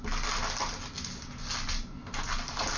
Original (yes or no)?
yes